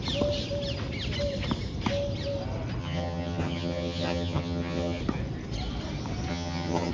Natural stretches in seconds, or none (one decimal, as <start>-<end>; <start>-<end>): 0.0-2.8; 5.0-6.3